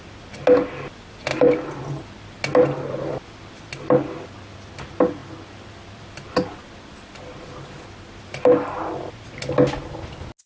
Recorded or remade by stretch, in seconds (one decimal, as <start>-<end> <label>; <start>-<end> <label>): 0.0-1.3 recorded; 1.3-1.8 remade; 1.8-10.5 recorded